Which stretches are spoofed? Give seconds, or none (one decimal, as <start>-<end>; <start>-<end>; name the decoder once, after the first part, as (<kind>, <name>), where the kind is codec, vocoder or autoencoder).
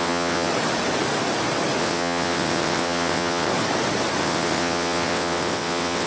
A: 0.0-0.5 (vocoder, WaveNeXt); 1.8-3.5; 4.2-6.1